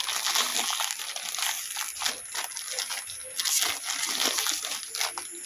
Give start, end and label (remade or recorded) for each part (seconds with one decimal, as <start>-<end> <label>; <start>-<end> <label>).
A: 0.0-5.5 recorded